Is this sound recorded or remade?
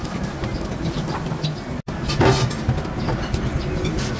recorded